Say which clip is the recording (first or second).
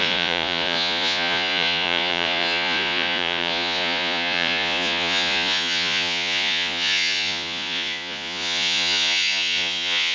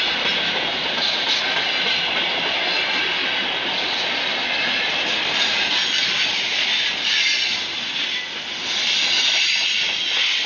second